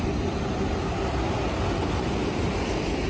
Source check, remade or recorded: recorded